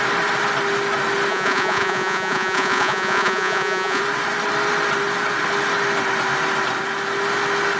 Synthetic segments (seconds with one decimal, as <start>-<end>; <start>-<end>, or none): 1.3-4.0